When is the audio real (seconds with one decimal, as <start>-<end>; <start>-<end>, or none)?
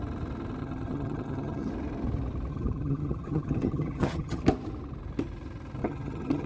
0.0-0.6; 1.7-2.5; 4.4-5.8